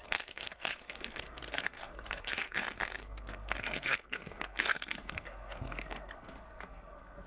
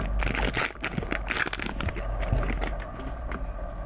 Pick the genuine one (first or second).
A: second